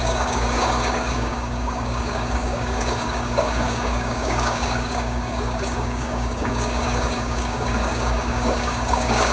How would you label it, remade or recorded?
remade